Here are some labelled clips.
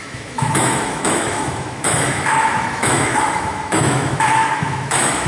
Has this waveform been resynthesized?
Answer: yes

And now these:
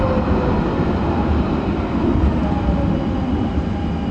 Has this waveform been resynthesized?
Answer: no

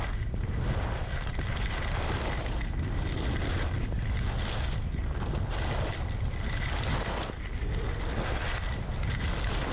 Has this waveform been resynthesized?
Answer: no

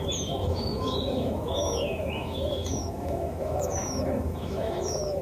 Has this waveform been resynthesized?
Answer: yes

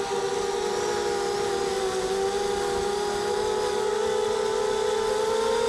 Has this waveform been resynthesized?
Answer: no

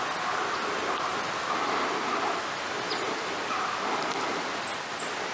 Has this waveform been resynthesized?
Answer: no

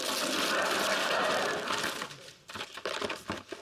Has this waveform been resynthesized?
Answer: no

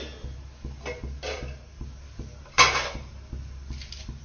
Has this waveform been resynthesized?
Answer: no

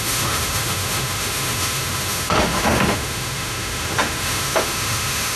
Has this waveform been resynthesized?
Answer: yes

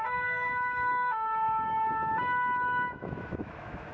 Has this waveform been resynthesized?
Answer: yes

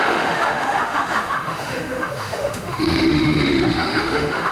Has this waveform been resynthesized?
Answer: yes